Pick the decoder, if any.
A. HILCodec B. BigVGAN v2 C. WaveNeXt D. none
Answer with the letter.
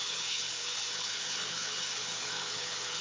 A